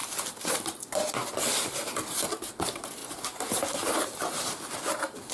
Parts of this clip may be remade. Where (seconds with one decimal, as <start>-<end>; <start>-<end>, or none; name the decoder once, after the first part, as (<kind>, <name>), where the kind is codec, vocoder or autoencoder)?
0.0-1.1 (vocoder, BigVGAN v2)